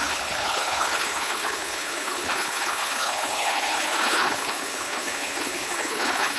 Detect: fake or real fake